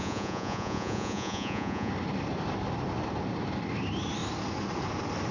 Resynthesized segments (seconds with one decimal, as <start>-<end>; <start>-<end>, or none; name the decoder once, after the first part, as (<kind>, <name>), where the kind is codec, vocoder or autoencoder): 0.0-1.9 (vocoder, Vocos)